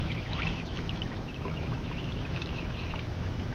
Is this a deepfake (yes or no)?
yes